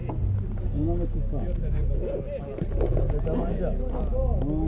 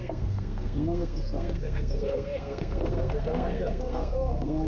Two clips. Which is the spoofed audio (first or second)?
second